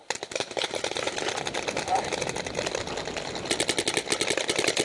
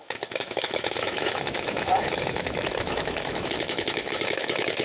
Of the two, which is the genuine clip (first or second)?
first